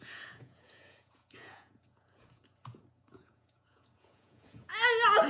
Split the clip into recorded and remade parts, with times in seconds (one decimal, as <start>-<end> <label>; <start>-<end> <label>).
0.0-4.7 remade; 4.7-5.3 recorded